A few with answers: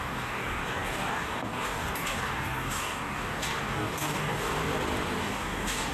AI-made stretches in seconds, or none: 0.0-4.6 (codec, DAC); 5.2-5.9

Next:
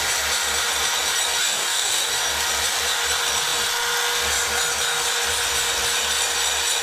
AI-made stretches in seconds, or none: 1.4-2.1 (codec, DAC)

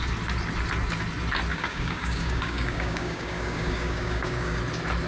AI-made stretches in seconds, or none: 1.5-4.6 (codec, DAC)

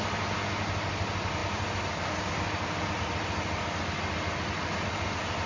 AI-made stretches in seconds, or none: none

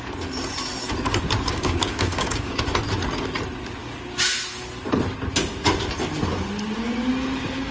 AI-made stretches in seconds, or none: 1.5-2.6 (codec, DAC); 3.8-4.3

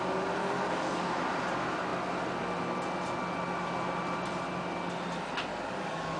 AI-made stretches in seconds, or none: 0.4-1.2 (codec, DAC); 5.5-6.2

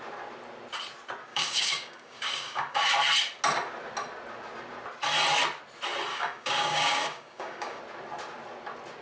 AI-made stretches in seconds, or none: 1.3-2.9 (codec, DAC); 6.1-7.8